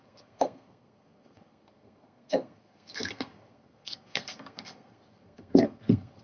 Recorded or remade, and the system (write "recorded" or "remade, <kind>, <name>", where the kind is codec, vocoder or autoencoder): remade, codec, SNAC